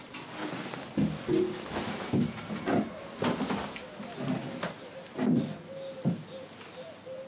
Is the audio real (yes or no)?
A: yes